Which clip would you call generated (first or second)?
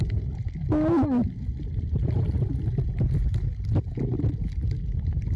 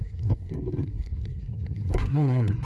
second